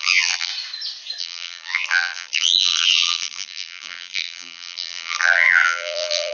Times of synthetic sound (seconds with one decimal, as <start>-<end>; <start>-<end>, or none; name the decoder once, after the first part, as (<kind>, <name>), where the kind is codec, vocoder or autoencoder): 0.0-0.5 (vocoder, BigVGAN v2); 1.2-6.3